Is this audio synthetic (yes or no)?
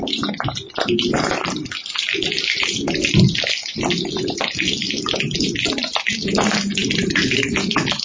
no